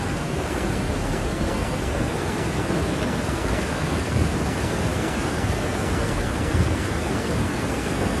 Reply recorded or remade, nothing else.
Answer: remade